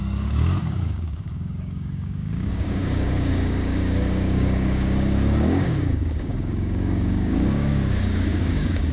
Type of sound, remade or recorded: remade